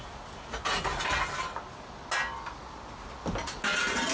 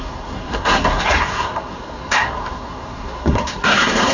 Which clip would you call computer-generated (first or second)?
second